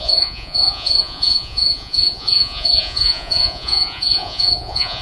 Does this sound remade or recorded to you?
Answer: remade